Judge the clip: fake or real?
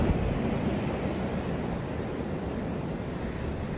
real